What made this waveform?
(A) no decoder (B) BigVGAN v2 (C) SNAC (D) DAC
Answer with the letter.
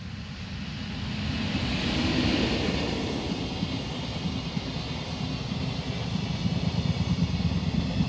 A